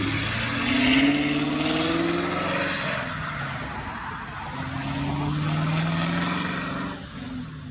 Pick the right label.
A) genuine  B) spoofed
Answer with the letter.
A